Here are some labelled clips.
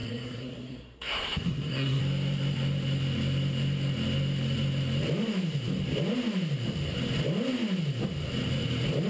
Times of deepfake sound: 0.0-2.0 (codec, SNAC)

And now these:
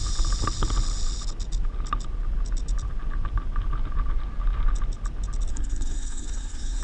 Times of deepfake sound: 5.5-6.8 (codec, SNAC)

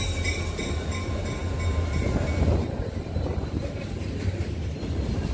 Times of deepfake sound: none

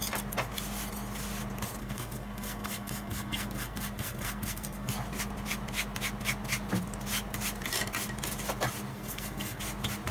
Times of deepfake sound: 1.8-4.9 (codec, SNAC); 8.9-9.6

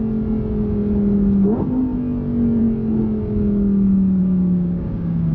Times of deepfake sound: 4.2-5.3 (codec, DAC)

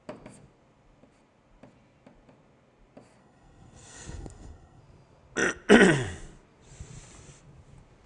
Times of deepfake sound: 3.2-4.8 (codec, SNAC)